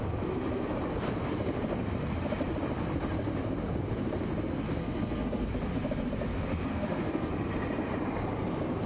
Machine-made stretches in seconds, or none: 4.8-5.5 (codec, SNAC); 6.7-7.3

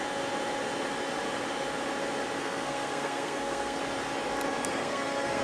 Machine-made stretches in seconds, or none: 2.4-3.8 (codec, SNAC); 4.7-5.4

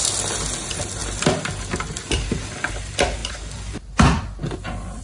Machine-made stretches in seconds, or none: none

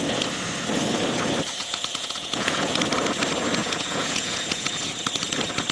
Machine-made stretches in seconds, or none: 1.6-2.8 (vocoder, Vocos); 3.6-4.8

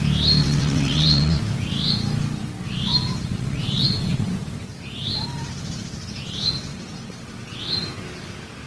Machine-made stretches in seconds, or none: 0.4-1.4 (vocoder, WaveNeXt); 3.3-4.3; 6.7-7.6

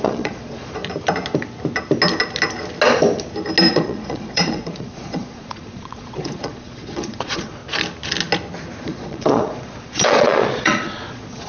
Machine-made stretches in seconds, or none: 0.0-0.8 (vocoder, Vocos); 3.7-7.6; 8.8-11.5

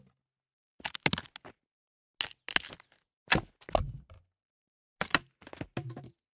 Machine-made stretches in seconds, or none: none